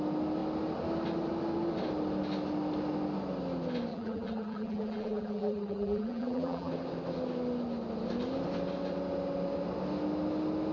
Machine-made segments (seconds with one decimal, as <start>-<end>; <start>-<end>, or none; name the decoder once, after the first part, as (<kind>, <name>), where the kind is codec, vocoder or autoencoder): 3.9-6.7 (vocoder, BigVGAN v2)